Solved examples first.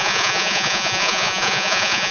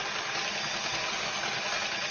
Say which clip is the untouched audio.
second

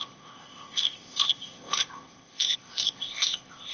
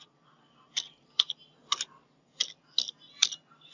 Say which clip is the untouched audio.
second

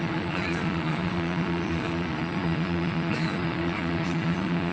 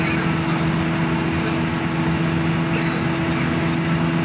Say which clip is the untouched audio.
second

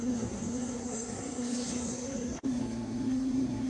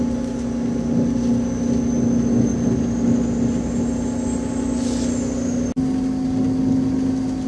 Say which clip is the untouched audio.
second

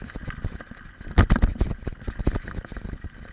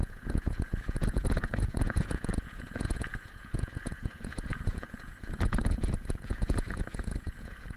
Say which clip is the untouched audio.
first